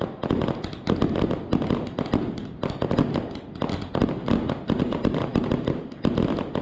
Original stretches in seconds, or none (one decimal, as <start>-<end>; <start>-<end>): 0.0-6.6